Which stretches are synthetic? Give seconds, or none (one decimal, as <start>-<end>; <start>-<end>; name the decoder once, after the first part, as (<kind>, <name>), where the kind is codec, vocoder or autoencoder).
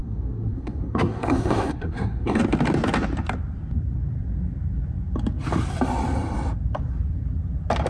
0.0-2.4 (codec, SNAC)